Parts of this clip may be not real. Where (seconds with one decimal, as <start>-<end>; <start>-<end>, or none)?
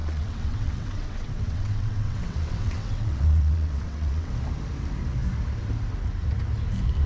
0.0-4.3